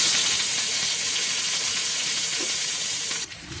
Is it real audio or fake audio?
fake